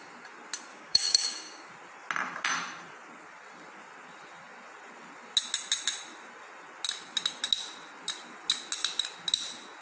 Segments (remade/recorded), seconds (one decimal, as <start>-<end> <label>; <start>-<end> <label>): 0.0-0.7 recorded; 0.7-1.7 remade; 1.7-9.8 recorded